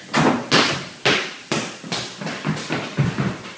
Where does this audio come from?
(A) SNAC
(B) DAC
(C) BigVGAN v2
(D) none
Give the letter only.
D